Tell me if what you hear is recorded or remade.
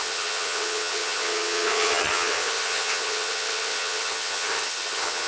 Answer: remade